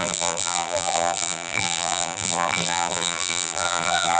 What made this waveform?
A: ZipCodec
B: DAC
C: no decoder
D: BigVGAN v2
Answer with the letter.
D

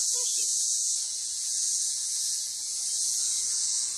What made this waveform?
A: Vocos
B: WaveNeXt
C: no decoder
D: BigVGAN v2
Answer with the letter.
A